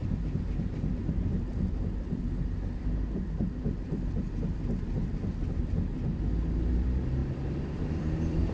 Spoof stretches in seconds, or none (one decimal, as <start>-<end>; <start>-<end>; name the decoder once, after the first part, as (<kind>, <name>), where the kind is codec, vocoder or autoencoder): 0.0-8.5 (vocoder, BigVGAN v2)